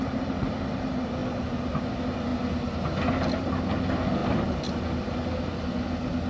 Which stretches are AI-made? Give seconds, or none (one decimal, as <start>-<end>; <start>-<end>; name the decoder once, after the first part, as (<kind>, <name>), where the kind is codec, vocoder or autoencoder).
none